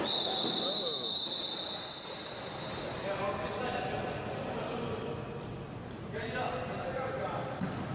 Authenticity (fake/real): real